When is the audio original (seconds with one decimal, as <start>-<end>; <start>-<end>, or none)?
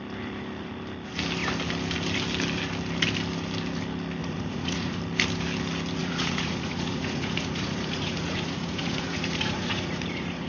0.0-4.2; 5.0-6.0